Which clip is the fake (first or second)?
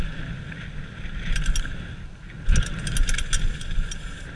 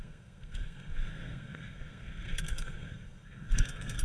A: second